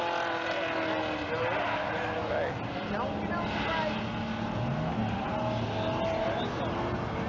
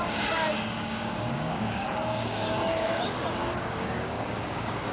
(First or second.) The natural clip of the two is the first